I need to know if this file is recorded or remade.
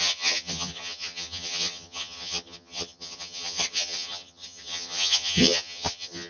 remade